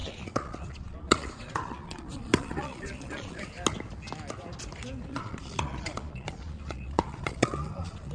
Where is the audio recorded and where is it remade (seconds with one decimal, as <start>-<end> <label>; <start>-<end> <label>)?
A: 0.0-3.4 remade; 3.4-5.1 recorded; 5.1-8.1 remade